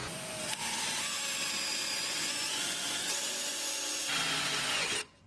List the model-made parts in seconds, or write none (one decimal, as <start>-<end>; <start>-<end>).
0.0-1.2; 1.8-5.3